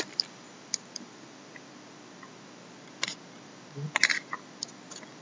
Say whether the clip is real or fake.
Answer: real